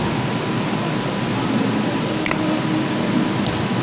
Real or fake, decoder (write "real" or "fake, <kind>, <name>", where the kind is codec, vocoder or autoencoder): real